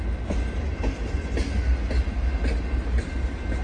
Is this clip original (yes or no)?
yes